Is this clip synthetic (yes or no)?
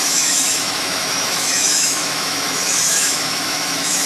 yes